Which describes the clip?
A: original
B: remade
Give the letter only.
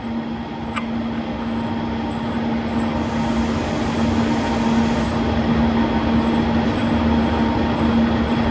A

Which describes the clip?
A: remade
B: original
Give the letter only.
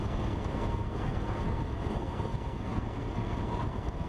A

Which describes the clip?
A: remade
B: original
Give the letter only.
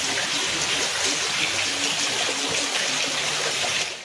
B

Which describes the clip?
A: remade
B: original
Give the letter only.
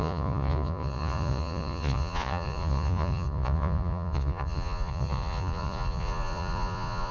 A